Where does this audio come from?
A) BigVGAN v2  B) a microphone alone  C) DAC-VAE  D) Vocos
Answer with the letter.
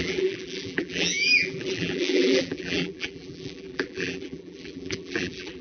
A